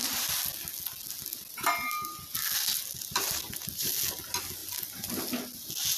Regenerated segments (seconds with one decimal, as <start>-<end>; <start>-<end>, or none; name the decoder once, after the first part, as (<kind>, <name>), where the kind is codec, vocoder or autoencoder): none